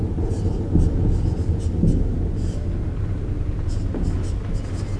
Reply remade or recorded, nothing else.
recorded